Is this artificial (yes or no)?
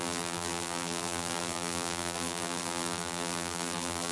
yes